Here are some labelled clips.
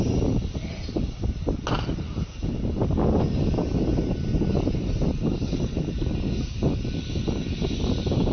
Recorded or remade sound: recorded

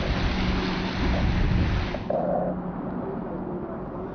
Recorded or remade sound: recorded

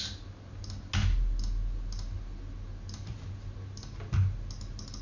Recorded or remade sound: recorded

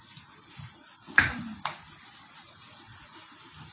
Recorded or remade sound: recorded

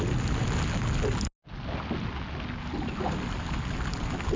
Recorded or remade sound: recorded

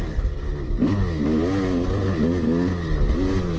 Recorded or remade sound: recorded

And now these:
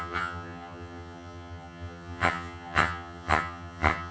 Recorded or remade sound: remade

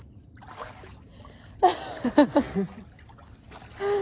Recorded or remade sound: recorded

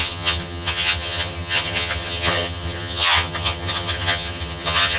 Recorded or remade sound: remade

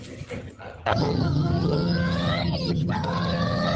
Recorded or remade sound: remade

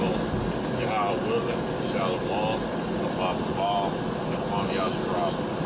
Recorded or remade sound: recorded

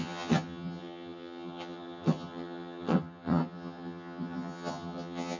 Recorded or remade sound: remade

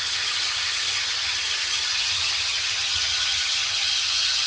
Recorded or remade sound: remade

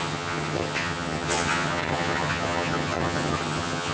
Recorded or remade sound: remade